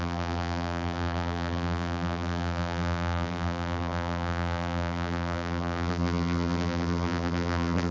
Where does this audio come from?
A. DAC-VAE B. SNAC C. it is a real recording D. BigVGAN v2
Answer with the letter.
D